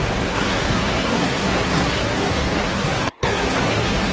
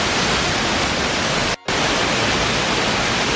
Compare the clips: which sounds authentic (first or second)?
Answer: second